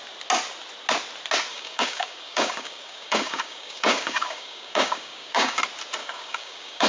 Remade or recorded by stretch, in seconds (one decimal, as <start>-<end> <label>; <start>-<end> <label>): 0.0-1.5 recorded; 1.5-5.6 remade; 5.6-6.0 recorded; 6.0-6.9 remade